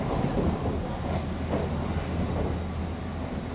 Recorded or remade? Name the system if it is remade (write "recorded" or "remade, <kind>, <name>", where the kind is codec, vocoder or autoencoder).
recorded